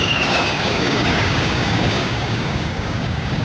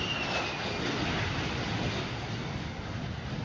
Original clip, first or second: second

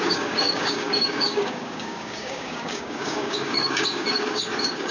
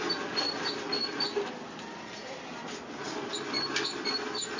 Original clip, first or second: second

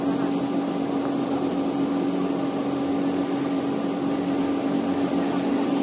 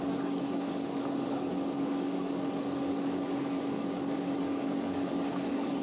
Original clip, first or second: first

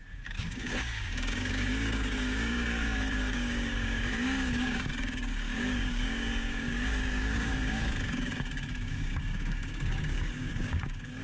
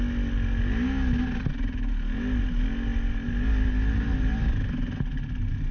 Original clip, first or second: second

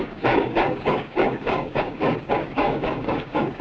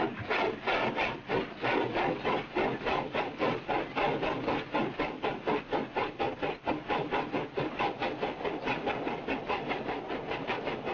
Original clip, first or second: second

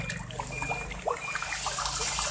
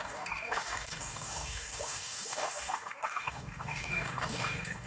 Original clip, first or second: first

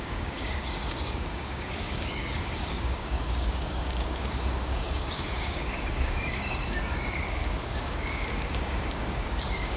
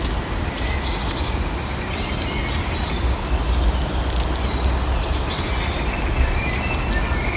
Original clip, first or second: second